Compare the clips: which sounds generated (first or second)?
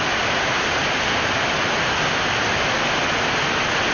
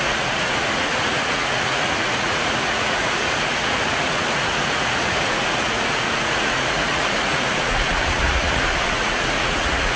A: second